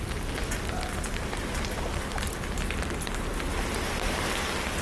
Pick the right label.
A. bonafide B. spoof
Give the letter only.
A